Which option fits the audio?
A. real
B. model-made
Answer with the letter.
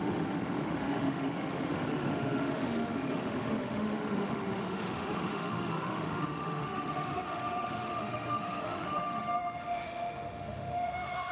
B